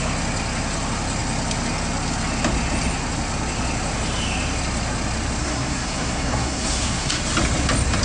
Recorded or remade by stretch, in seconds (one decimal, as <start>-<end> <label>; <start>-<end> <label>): 0.0-5.4 recorded; 5.4-7.2 remade; 7.2-8.0 recorded